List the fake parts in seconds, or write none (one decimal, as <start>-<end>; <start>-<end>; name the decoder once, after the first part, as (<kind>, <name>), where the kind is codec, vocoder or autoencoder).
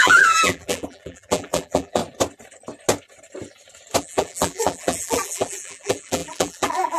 0.0-2.0 (vocoder, BigVGAN v2); 4.0-7.0